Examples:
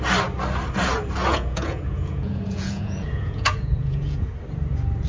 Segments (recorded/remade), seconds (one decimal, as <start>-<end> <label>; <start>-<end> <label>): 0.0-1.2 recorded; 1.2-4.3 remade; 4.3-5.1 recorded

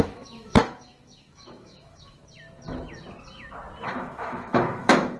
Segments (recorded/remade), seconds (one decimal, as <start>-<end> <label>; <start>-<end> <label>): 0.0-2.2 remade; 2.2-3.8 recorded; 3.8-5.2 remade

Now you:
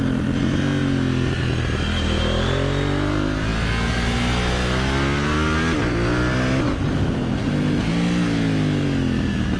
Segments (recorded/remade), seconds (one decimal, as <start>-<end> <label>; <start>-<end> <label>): 0.0-9.6 recorded